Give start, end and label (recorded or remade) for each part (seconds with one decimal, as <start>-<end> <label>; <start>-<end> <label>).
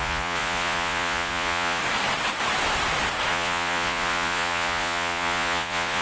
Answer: 0.0-1.8 remade; 1.8-3.3 recorded; 3.3-6.0 remade